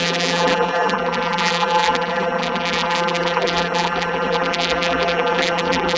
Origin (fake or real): fake